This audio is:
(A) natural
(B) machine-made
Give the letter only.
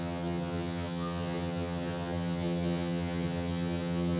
B